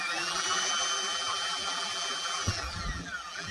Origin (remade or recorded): remade